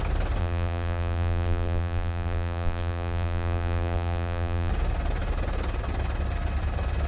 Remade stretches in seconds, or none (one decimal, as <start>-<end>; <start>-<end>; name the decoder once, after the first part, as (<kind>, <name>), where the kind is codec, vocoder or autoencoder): 0.4-4.7 (vocoder, BigVGAN v2)